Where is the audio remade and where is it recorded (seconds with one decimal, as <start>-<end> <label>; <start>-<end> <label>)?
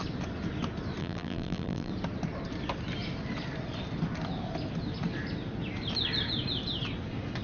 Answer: 0.0-1.0 recorded; 1.0-1.9 remade; 1.9-7.4 recorded